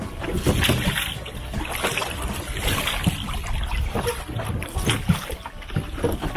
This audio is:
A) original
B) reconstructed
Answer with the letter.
A